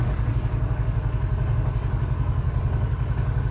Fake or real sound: fake